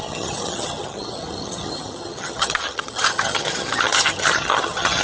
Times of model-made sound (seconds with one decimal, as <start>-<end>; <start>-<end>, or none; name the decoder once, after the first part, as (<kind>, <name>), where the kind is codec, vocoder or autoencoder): 0.0-5.0 (vocoder, HiFi-GAN)